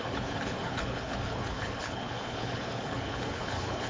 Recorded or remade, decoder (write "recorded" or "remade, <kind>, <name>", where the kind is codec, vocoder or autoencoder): remade, codec, HILCodec